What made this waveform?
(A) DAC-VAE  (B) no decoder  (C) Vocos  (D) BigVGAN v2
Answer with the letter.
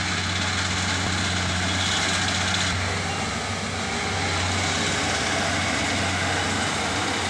B